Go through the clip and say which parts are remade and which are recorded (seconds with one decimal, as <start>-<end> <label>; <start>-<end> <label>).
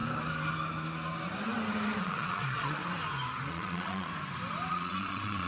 0.0-2.0 recorded; 2.0-2.8 remade; 2.8-3.5 recorded; 3.5-4.1 remade; 4.1-4.7 recorded; 4.7-5.5 remade